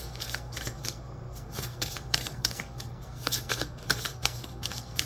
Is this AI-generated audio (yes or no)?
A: yes